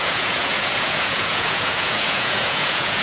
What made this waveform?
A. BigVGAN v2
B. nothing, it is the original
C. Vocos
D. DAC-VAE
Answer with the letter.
C